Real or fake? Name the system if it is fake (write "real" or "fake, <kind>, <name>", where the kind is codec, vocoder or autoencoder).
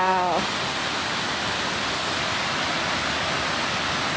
real